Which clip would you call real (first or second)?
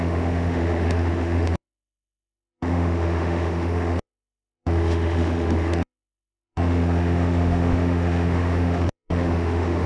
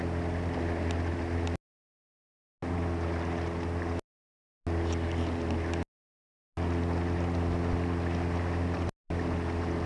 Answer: second